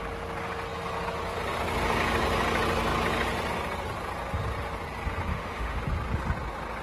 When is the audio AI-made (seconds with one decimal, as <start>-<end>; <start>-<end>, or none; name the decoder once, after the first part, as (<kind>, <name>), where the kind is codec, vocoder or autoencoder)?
5.3-5.8 (autoencoder, DAC-VAE)

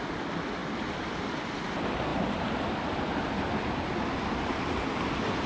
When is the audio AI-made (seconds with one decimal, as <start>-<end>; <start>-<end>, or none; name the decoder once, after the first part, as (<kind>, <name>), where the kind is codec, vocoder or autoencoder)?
none

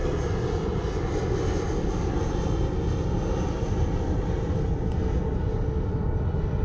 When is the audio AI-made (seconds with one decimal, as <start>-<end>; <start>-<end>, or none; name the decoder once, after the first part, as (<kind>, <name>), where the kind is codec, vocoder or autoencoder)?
none

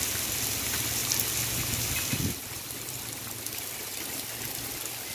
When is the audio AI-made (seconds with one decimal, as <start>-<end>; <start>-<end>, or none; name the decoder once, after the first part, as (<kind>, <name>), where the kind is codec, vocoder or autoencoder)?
none

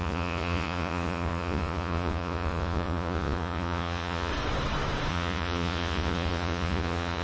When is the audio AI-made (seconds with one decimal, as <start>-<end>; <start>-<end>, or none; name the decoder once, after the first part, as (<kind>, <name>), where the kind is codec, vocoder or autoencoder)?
0.0-4.3 (vocoder, Vocos); 5.1-7.2

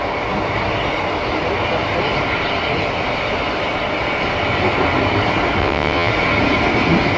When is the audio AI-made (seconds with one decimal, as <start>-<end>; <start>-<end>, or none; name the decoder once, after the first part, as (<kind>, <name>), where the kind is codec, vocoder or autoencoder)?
5.6-6.1 (vocoder, WaveNeXt)

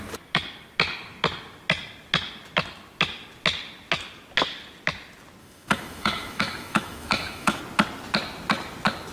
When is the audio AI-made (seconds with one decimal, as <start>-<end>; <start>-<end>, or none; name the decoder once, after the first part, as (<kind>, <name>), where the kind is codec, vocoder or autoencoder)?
5.4-7.6 (autoencoder, DAC-VAE)

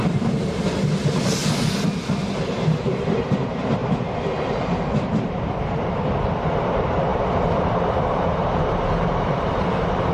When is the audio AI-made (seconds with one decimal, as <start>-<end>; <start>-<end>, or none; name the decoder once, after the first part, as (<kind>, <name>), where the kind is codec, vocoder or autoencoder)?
0.0-1.4 (vocoder, BigVGAN v2); 2.4-3.8; 4.5-10.1